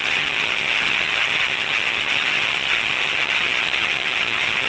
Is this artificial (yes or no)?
yes